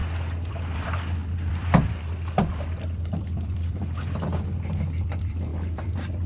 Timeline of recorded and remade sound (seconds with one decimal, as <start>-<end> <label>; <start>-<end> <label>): 0.0-0.5 recorded; 0.5-6.3 remade